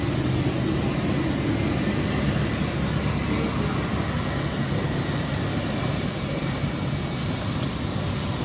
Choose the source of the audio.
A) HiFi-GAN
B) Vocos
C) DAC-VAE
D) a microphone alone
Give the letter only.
D